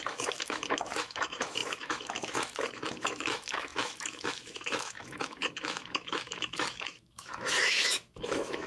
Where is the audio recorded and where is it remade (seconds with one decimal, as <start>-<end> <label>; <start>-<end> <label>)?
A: 0.0-8.7 remade